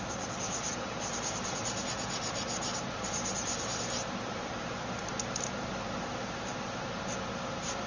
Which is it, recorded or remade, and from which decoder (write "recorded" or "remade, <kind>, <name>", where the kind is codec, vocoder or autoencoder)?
remade, vocoder, BigVGAN v2